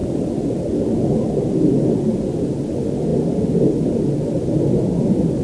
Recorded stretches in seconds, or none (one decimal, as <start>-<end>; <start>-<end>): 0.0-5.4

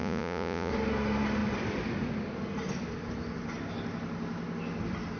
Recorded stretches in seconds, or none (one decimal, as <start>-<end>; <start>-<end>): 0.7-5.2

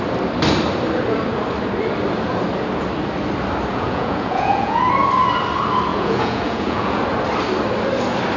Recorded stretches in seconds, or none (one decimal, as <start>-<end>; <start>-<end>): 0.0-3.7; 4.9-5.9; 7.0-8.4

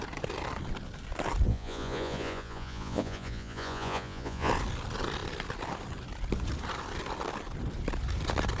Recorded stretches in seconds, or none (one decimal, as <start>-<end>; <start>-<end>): 0.0-1.5; 4.5-8.6